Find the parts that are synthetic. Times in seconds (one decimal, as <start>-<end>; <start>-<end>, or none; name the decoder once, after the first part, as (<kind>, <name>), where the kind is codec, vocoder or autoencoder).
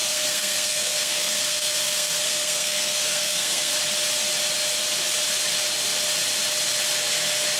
0.0-3.7 (codec, SNAC)